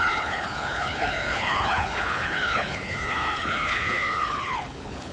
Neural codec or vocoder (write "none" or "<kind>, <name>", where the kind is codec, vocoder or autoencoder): codec, HILCodec